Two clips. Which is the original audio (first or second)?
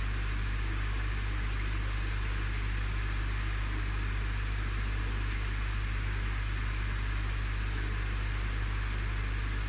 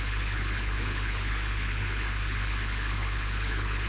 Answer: first